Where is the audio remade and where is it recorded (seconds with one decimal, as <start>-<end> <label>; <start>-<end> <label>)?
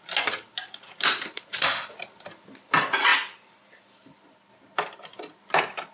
0.0-5.9 recorded